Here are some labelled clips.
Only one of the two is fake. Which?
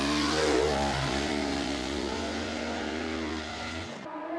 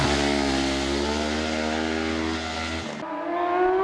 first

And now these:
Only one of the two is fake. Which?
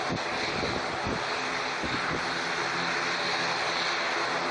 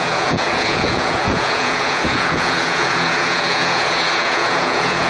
second